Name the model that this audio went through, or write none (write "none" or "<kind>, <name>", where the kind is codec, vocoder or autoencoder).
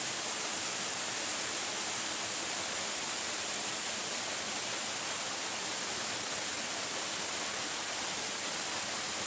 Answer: none